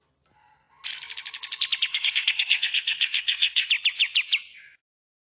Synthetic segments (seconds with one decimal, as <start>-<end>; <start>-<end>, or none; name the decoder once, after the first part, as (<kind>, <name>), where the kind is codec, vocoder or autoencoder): 1.9-3.7 (codec, SNAC)